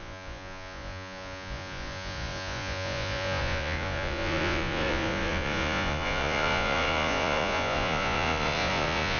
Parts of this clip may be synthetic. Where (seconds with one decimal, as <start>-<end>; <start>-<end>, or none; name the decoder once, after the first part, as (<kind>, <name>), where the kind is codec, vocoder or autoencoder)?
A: 0.0-9.2 (vocoder, Vocos)